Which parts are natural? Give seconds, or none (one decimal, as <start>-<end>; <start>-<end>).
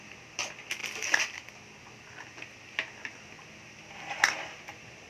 0.0-5.1